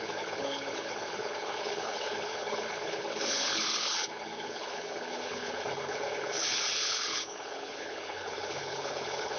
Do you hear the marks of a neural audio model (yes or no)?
yes